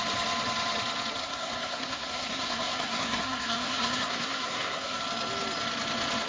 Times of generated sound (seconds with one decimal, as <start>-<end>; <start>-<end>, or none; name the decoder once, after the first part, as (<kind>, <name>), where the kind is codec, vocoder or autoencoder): 1.2-5.0 (codec, SNAC)